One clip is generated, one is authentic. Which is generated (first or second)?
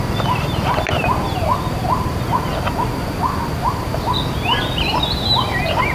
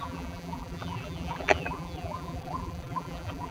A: second